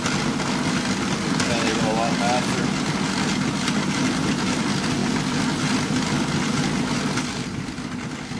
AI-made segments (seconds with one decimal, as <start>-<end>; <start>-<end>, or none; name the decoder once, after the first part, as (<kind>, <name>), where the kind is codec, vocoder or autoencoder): none